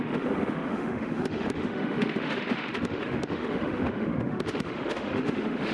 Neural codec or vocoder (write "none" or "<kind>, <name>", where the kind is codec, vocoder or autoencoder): autoencoder, DAC-VAE